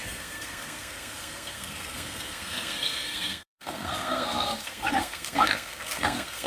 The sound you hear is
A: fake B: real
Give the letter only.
A